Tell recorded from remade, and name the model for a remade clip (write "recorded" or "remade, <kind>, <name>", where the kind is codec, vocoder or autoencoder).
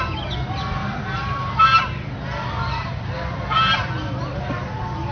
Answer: recorded